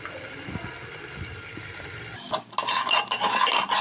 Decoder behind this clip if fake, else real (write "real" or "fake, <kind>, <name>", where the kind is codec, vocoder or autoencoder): real